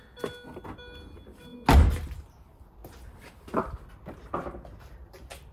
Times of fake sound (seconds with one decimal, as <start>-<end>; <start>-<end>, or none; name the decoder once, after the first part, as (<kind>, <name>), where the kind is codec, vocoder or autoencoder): none